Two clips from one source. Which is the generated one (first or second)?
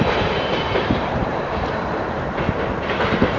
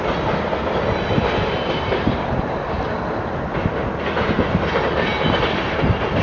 first